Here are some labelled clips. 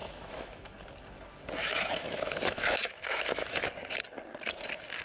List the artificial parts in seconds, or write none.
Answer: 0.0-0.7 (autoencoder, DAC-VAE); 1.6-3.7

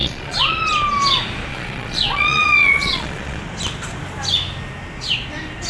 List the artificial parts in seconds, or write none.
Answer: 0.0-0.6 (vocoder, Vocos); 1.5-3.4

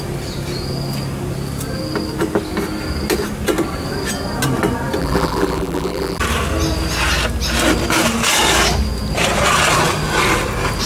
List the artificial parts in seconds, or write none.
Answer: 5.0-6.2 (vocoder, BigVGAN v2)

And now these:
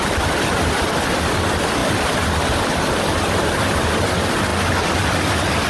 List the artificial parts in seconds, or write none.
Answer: none

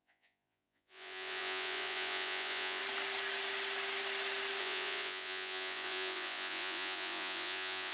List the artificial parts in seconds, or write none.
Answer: 0.0-2.8 (vocoder, Vocos); 4.6-7.9